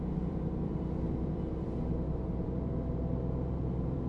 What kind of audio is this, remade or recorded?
remade